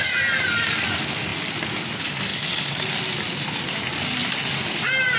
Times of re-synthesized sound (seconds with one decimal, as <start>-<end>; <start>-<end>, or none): none